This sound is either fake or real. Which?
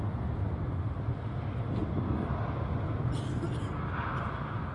real